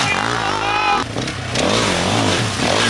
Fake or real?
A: real